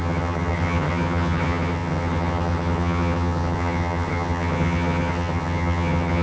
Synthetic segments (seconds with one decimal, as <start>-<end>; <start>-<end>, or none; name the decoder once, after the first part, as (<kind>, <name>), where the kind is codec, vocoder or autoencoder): 0.0-6.2 (vocoder, HiFi-GAN)